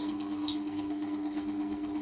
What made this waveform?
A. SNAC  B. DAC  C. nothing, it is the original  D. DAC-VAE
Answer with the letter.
A